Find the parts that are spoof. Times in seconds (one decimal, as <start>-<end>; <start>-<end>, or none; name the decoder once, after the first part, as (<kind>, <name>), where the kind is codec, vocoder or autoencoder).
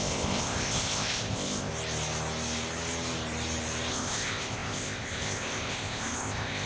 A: 0.0-1.7 (codec, ZipCodec); 3.9-6.7